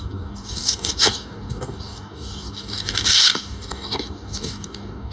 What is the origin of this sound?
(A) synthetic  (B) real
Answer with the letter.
A